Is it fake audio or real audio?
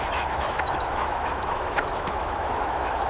fake